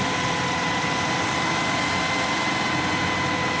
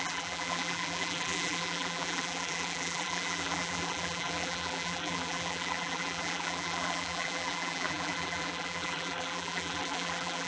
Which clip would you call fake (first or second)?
second